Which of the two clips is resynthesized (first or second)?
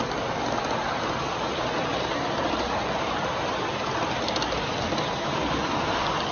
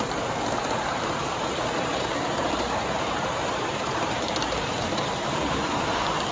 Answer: second